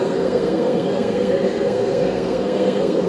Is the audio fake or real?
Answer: fake